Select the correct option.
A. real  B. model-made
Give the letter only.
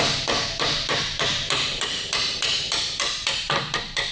B